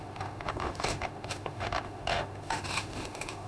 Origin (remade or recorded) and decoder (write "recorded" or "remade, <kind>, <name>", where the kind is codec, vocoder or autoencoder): remade, autoencoder, DAC-VAE